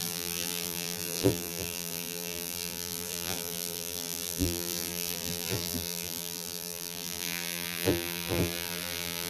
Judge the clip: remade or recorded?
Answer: remade